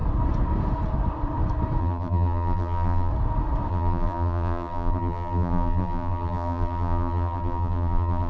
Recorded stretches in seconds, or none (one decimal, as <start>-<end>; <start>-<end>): 0.0-1.8; 3.1-3.7